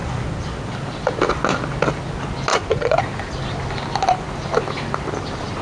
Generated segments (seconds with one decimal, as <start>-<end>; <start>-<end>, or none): 2.5-3.0